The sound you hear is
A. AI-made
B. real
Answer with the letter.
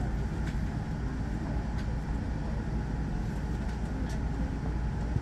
B